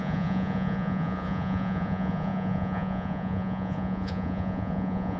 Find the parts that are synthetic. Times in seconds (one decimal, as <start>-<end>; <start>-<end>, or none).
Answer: 0.0-5.2